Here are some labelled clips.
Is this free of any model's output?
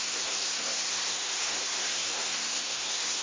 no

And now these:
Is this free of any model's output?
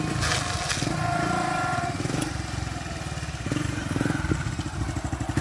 yes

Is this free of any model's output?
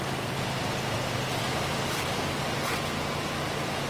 yes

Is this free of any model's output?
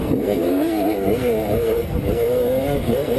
no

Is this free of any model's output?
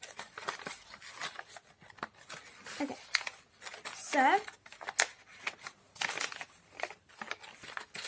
yes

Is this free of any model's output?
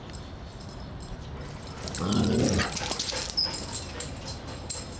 yes